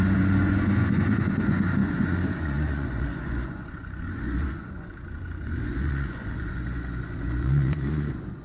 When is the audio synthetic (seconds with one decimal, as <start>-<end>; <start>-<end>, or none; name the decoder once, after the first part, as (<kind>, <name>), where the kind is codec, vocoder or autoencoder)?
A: 0.0-8.4 (vocoder, Vocos)